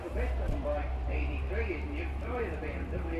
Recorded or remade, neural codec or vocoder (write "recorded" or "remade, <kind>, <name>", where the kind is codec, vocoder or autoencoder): remade, vocoder, BigVGAN v2